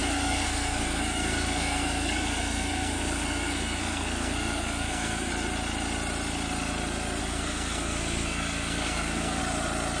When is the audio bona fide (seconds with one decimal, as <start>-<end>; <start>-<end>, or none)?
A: 5.3-7.2; 9.4-10.0